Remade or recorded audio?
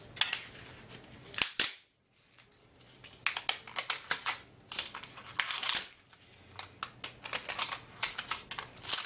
recorded